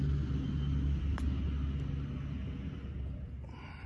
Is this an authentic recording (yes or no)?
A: yes